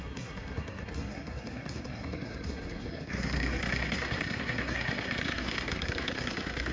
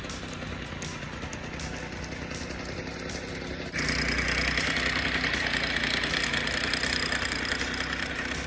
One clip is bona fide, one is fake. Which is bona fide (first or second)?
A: second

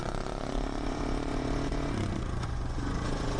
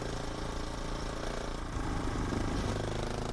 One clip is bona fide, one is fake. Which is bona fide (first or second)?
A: second